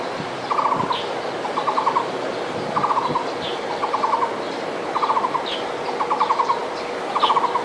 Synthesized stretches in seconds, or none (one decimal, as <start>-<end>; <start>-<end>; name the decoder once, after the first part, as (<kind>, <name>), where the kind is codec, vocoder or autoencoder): none